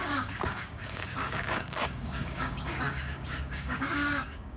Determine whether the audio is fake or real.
fake